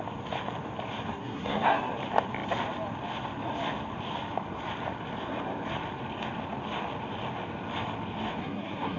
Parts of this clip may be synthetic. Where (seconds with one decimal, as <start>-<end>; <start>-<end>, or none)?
1.1-1.9; 8.4-9.0